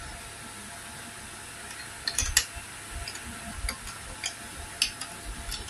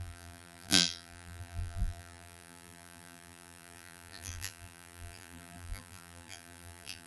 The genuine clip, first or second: first